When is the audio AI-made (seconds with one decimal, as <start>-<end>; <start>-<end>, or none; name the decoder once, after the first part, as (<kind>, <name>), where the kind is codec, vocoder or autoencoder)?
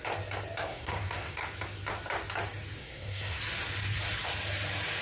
0.7-1.4 (codec, SNAC); 2.8-3.4